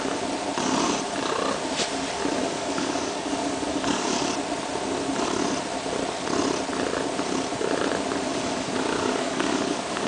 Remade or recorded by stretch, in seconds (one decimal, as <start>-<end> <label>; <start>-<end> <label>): 0.0-2.4 recorded; 2.4-4.3 remade; 4.3-8.3 recorded; 8.3-10.1 remade

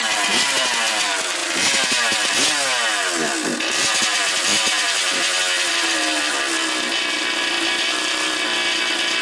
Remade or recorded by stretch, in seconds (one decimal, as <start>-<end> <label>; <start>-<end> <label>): 0.0-1.4 recorded; 1.4-2.3 remade; 2.3-4.5 recorded; 4.5-5.2 remade; 5.2-9.2 recorded

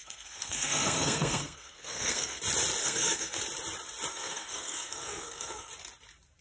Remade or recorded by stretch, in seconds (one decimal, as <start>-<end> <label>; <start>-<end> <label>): 0.0-2.4 remade; 2.4-2.8 recorded; 2.8-3.4 remade; 3.4-4.1 recorded; 4.1-5.7 remade; 5.7-6.4 recorded

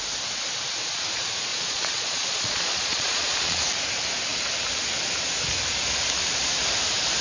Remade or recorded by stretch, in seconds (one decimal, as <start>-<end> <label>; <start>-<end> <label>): 0.0-1.5 recorded; 1.5-3.6 remade; 3.6-7.2 recorded

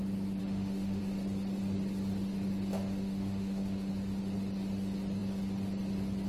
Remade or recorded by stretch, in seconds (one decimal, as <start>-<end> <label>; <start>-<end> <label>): 0.0-0.4 recorded; 0.4-1.0 remade; 1.0-2.7 recorded; 2.7-3.9 remade; 3.9-6.3 recorded

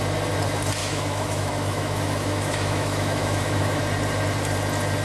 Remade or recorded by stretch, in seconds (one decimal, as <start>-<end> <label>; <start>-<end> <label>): 0.0-0.8 recorded; 0.8-3.8 remade; 3.8-5.0 recorded